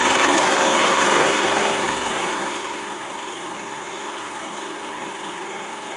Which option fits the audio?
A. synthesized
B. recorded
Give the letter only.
A